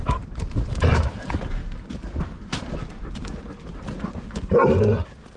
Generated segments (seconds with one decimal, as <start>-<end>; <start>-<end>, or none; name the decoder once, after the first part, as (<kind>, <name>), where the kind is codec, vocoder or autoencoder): none